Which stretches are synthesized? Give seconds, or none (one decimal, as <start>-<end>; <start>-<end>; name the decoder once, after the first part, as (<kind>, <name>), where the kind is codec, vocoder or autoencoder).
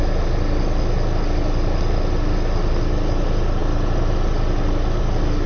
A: none